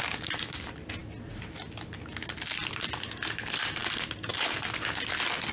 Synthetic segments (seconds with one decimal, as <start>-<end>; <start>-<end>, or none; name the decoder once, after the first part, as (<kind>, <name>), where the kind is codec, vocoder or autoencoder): none